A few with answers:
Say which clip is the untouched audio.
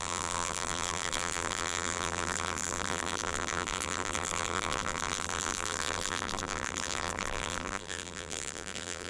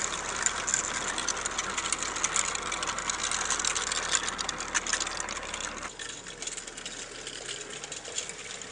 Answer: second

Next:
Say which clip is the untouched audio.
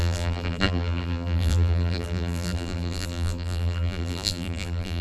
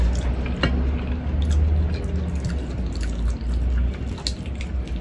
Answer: second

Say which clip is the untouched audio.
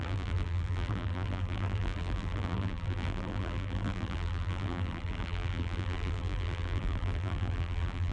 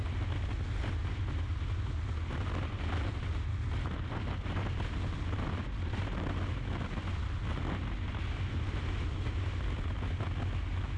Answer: second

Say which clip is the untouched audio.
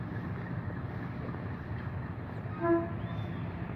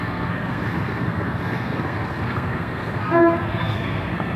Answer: first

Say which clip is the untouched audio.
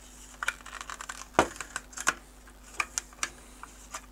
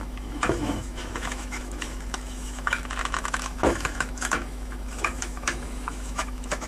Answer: first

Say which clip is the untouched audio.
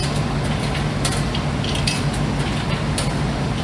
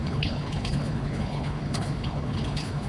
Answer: first